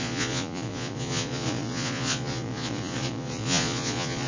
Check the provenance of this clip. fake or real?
fake